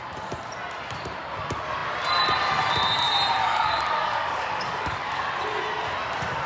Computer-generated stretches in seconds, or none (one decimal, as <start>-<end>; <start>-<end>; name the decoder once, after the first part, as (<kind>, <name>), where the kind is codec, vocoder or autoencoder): 3.4-5.2 (codec, DAC)